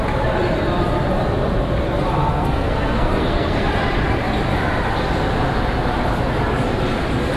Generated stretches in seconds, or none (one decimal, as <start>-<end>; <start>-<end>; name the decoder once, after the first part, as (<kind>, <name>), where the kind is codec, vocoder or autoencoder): 2.2-3.7 (codec, SNAC)